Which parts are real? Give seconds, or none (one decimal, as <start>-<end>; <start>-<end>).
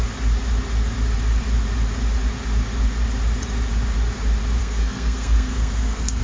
0.0-4.6